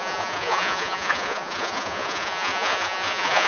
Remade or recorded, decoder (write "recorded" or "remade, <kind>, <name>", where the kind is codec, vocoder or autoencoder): remade, vocoder, Vocos